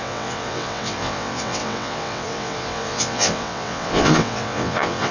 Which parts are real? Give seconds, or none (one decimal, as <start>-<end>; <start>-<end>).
none